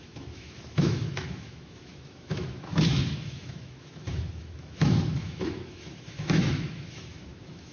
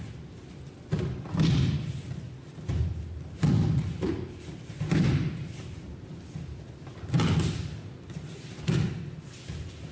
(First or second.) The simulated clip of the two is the first